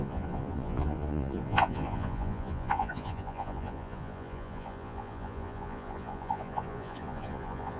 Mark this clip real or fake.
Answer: fake